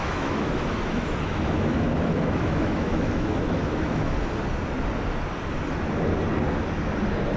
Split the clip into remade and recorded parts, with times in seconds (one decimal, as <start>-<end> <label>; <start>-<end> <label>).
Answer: 0.0-4.1 remade; 4.1-7.4 recorded